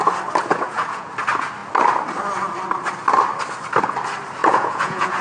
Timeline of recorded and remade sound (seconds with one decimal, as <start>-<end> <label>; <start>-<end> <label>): 0.0-0.5 recorded; 0.5-1.1 remade; 1.1-4.4 recorded; 4.4-5.2 remade

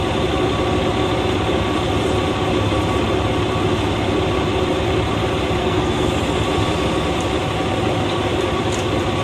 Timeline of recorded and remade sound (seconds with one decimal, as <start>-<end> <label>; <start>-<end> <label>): 0.0-5.6 recorded; 5.6-6.1 remade; 6.1-9.2 recorded

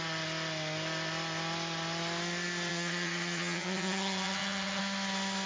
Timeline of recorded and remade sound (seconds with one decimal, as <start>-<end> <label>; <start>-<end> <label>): 0.0-2.7 recorded; 2.7-4.8 remade; 4.8-5.5 recorded

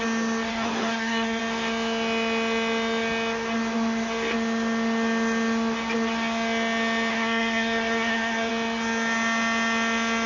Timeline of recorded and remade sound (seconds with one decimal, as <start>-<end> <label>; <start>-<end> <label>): 0.0-0.5 recorded; 0.5-1.4 remade; 1.4-7.1 recorded; 7.1-8.5 remade; 8.5-10.3 recorded

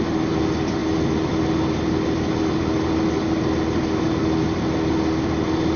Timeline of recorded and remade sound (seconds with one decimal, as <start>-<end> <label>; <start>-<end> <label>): 0.0-5.8 recorded

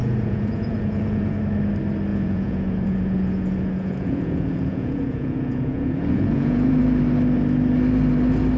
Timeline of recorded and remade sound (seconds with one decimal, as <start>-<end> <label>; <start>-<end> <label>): 0.0-1.4 remade; 1.4-2.1 recorded; 2.1-6.8 remade; 6.8-8.6 recorded

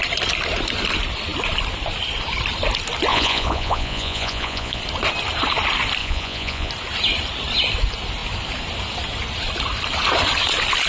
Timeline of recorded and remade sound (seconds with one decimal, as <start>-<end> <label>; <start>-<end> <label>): 0.0-3.1 recorded; 3.1-4.8 remade; 4.8-6.0 recorded; 6.0-6.7 remade; 6.7-10.9 recorded

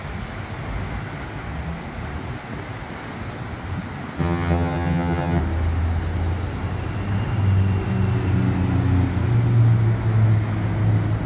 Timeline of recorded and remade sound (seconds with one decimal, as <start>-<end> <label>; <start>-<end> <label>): 0.0-4.2 recorded; 4.2-5.4 remade; 5.4-11.3 recorded